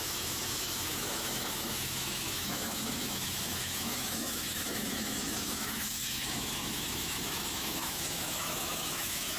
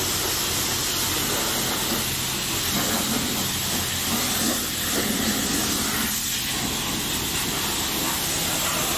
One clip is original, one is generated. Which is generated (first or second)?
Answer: first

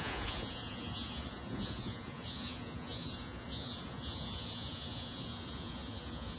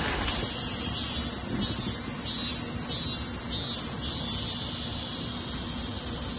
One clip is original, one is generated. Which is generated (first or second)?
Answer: first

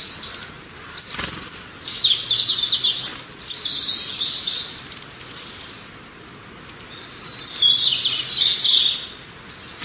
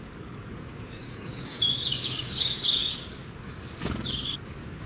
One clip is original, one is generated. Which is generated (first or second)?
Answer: second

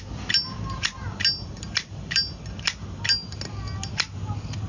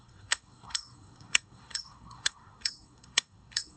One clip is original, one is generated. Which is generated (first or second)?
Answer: second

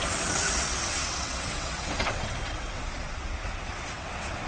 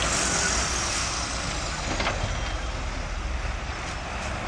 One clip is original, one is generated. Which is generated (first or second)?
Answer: first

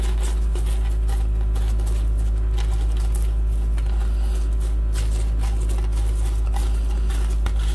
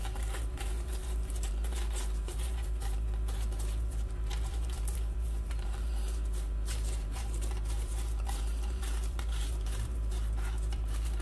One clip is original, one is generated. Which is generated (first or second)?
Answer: second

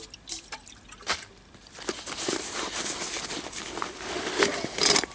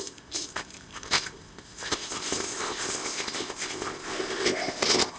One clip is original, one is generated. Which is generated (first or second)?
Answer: second